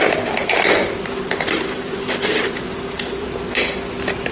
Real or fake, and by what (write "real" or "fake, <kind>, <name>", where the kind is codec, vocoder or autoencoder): fake, vocoder, BigVGAN v2